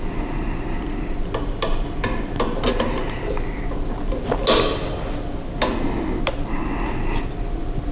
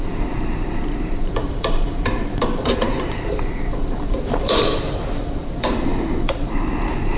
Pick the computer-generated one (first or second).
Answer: second